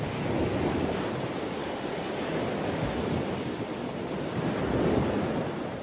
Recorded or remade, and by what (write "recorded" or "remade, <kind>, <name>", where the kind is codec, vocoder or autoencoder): recorded